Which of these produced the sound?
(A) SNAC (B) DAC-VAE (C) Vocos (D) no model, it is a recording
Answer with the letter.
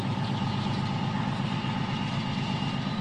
D